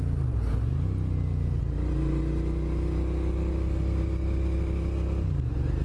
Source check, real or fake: real